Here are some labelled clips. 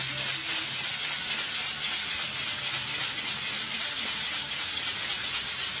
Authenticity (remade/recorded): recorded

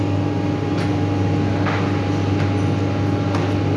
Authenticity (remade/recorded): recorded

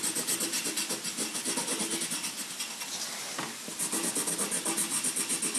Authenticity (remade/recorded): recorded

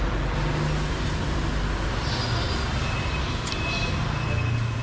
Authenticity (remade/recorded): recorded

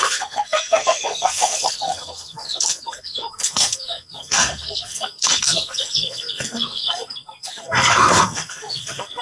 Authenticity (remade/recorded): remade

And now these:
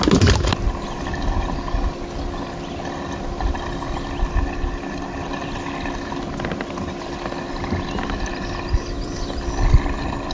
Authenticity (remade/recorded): recorded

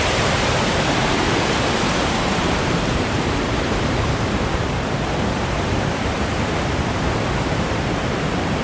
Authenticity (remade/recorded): remade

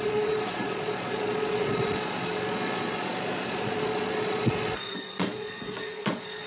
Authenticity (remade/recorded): remade